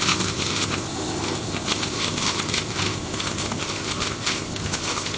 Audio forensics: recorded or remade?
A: remade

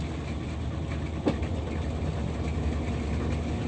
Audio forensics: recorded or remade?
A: recorded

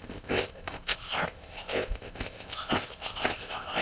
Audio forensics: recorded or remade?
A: remade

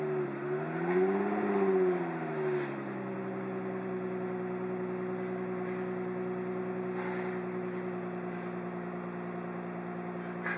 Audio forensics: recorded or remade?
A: recorded